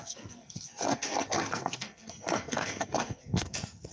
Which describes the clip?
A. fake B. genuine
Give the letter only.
A